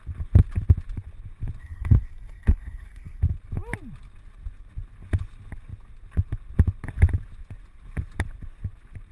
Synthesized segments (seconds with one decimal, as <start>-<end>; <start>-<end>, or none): 1.6-3.2